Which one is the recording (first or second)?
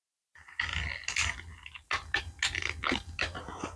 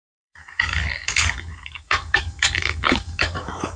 first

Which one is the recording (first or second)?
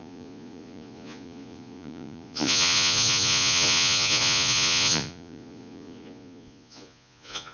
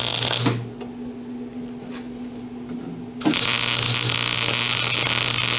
second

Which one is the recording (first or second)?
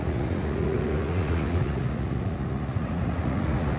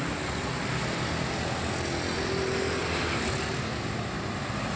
second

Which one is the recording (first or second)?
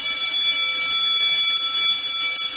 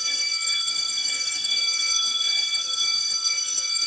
first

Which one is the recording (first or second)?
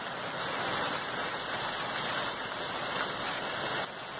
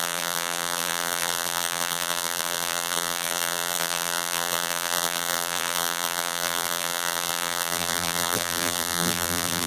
first